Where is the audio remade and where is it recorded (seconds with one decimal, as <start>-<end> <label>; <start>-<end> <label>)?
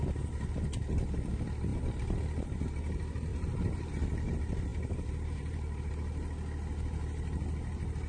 0.0-3.3 recorded; 3.3-3.9 remade; 3.9-4.7 recorded; 4.7-5.9 remade; 5.9-8.1 recorded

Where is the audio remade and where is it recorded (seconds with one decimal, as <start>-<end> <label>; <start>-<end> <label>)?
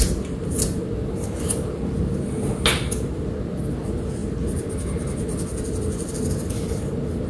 0.0-7.3 recorded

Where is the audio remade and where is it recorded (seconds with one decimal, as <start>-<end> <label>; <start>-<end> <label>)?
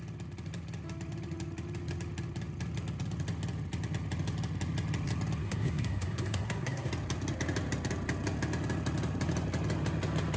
0.0-5.4 recorded; 5.4-6.9 remade; 6.9-10.4 recorded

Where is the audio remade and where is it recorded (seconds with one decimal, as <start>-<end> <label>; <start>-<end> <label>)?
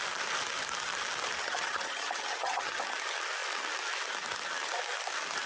0.0-1.4 recorded; 1.4-2.8 remade; 2.8-5.5 recorded